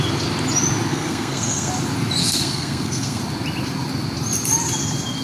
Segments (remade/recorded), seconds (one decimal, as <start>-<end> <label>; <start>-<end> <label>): 0.0-0.9 recorded; 0.9-1.7 remade; 1.7-2.2 recorded; 2.2-3.2 remade; 3.2-5.2 recorded